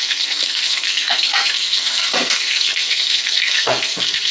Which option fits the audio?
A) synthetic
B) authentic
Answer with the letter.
A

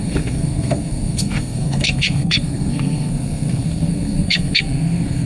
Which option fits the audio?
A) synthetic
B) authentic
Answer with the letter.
A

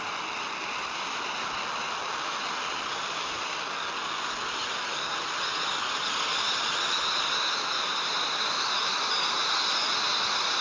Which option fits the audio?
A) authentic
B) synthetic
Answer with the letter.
A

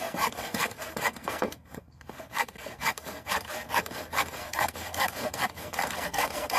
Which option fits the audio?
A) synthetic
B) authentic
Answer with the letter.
A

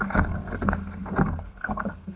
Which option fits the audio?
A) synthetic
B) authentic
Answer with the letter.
A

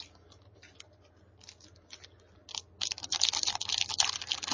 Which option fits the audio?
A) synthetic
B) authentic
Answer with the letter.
B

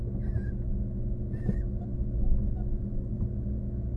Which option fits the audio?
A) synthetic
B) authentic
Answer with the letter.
B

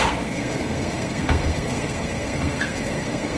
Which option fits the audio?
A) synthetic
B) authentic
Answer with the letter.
A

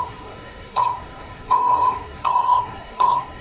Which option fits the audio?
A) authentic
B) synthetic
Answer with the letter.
B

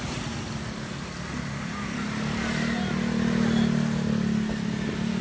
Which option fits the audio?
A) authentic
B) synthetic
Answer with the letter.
A